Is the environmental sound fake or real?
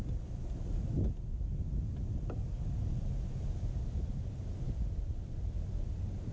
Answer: real